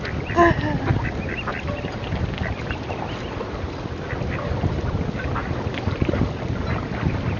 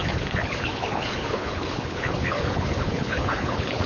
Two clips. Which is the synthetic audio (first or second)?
second